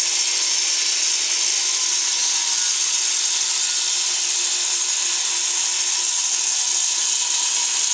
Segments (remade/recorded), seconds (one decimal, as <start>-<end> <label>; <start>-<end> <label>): 0.0-7.9 recorded